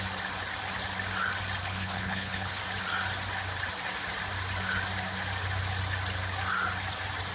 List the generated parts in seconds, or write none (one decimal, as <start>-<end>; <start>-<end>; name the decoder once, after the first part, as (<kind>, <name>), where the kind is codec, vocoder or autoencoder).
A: 1.6-2.6 (codec, HILCodec)